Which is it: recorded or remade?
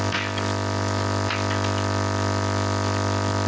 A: recorded